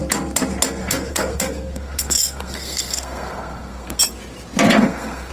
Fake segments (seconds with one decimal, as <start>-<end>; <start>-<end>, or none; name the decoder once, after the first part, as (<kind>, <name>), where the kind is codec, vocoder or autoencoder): 0.8-4.0 (codec, SNAC); 4.7-5.3